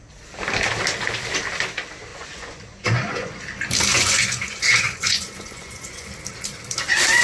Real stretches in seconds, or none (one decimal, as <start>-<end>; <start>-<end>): 0.0-2.1; 3.4-3.9; 6.1-7.2

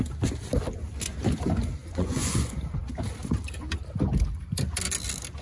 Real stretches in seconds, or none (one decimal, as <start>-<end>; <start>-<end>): 0.0-1.8; 2.6-5.4

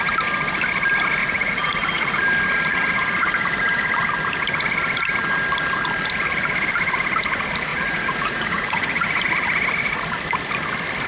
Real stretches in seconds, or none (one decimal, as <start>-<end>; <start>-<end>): 0.0-1.2; 2.2-7.7; 9.2-11.1

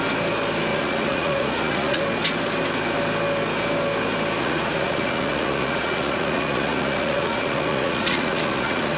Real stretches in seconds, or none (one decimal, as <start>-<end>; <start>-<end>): 0.0-0.7; 2.0-4.4